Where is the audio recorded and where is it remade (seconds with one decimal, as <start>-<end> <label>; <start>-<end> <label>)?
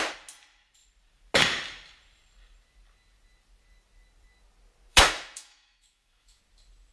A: 0.0-4.9 recorded; 4.9-6.4 remade; 6.4-6.9 recorded